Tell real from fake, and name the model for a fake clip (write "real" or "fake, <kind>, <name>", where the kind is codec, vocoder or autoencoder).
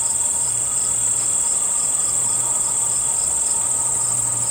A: real